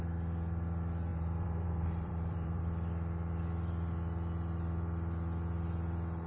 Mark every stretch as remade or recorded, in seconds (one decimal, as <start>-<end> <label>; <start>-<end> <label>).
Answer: 0.0-1.1 recorded; 1.1-2.6 remade; 2.6-6.3 recorded

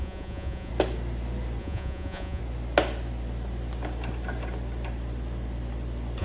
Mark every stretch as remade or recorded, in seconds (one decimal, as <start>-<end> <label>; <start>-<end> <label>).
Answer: 0.0-0.7 remade; 0.7-1.6 recorded; 1.6-2.4 remade; 2.4-6.2 recorded

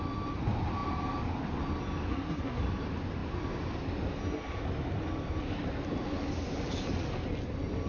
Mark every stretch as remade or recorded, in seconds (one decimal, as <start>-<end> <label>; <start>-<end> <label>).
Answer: 0.0-2.1 recorded; 2.1-2.6 remade; 2.6-7.9 recorded

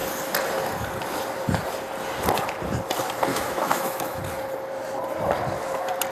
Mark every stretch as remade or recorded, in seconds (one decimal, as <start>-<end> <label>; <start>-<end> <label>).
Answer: 0.0-3.3 recorded; 3.3-4.2 remade; 4.2-6.1 recorded

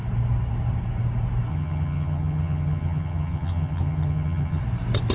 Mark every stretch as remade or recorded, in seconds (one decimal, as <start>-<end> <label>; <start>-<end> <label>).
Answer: 0.0-1.5 recorded; 1.5-4.6 remade; 4.6-5.1 recorded